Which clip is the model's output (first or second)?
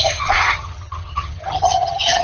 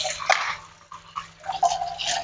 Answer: first